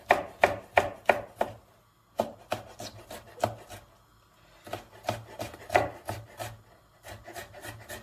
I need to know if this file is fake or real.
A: real